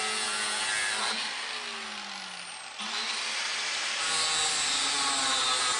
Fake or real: real